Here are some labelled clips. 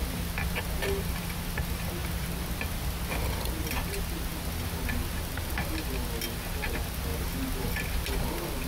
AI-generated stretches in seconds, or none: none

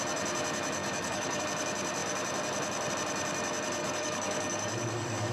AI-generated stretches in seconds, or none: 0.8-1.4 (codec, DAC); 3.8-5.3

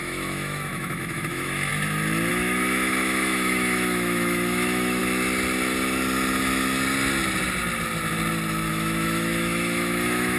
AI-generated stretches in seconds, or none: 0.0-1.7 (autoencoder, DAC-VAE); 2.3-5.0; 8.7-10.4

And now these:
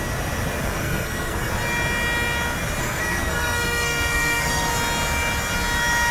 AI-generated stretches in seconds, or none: 0.6-1.5 (codec, SNAC); 2.8-4.7

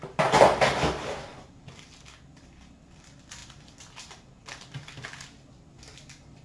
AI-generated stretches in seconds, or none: none

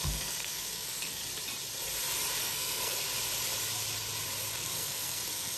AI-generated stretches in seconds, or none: 0.0-1.2 (codec, SNAC); 2.4-3.1; 4.5-5.6